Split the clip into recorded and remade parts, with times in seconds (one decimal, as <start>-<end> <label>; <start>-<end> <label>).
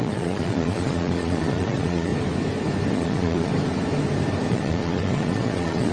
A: 0.0-2.1 remade; 2.1-2.9 recorded; 2.9-3.5 remade; 3.5-4.5 recorded; 4.5-5.9 remade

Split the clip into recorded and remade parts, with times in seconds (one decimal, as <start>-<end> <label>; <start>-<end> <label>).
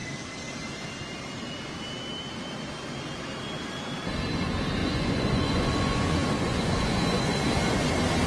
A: 0.0-4.8 recorded; 4.8-7.9 remade; 7.9-8.3 recorded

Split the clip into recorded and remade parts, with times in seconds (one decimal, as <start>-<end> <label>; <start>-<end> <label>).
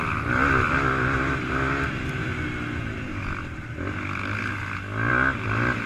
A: 0.0-5.9 recorded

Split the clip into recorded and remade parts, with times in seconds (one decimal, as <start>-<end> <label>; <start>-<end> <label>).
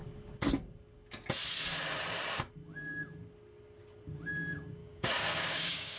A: 0.0-4.8 recorded; 4.8-6.0 remade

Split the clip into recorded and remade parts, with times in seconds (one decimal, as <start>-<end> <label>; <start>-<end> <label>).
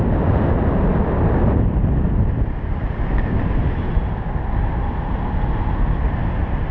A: 0.0-6.7 recorded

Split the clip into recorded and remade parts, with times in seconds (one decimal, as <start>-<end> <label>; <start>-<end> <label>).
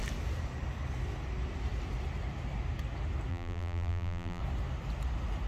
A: 0.0-3.3 recorded; 3.3-4.4 remade; 4.4-5.5 recorded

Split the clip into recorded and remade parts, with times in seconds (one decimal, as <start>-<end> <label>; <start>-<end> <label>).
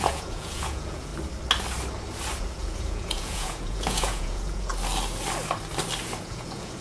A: 0.0-1.1 remade; 1.1-2.4 recorded; 2.4-4.7 remade; 4.7-6.2 recorded; 6.2-6.8 remade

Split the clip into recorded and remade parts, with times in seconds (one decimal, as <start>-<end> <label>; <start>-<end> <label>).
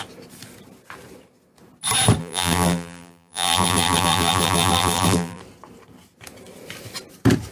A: 0.0-2.2 recorded; 2.2-5.4 remade; 5.4-7.5 recorded